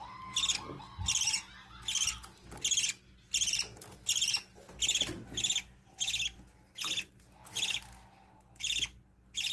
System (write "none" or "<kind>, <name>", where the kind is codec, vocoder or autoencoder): none